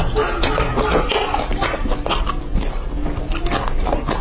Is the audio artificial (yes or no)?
no